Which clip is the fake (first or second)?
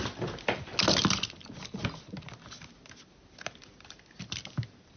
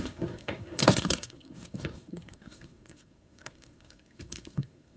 second